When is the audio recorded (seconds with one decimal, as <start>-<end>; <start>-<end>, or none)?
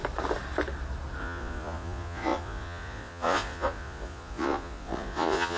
0.0-1.2